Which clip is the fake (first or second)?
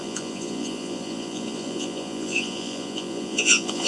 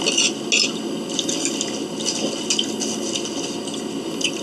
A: first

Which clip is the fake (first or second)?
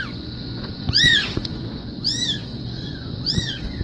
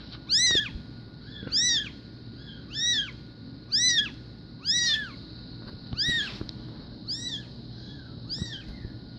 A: first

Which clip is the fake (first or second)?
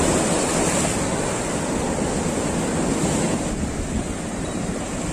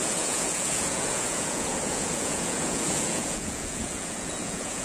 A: second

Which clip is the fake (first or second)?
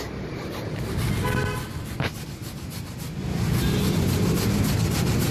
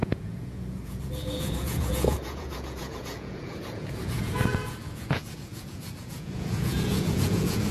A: second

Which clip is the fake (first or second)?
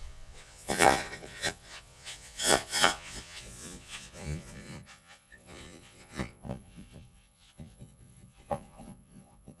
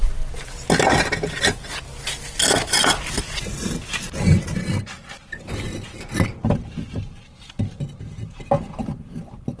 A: first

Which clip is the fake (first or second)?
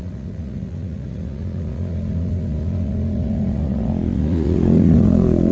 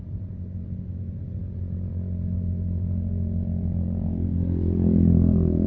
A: first